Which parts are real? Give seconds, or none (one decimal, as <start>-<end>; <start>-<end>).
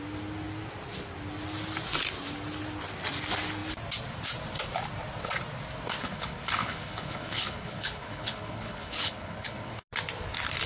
0.0-6.0; 9.7-10.7